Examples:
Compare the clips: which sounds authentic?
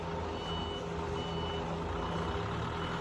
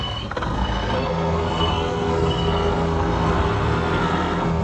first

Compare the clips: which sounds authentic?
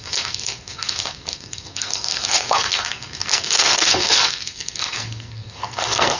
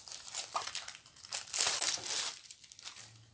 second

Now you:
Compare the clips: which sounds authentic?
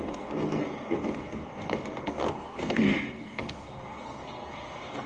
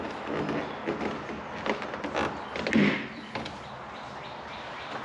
second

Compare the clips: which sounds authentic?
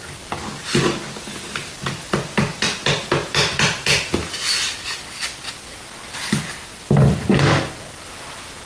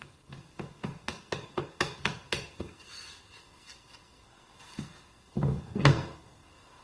first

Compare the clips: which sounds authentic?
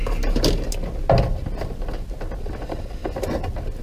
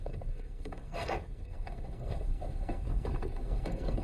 first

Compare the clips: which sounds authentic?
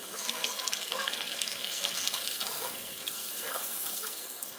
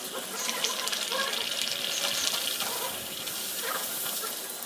second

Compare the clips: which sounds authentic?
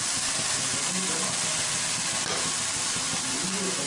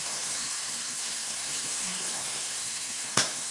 first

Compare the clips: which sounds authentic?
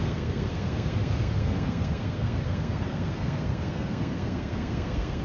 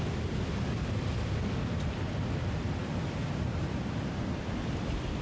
second